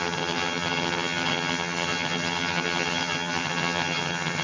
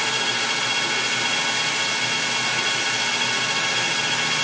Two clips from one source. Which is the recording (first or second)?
second